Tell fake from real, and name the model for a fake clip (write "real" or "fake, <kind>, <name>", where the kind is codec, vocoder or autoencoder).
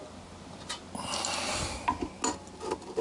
real